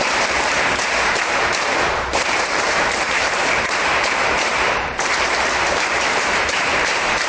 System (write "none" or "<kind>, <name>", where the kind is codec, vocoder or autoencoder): vocoder, BigVGAN v2